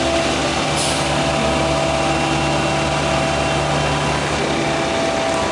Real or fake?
real